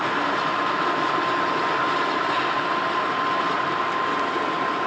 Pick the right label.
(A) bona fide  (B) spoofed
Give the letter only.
A